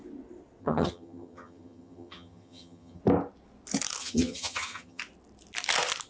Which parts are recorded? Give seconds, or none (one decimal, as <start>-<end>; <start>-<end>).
0.0-0.6; 3.0-4.0; 5.0-6.1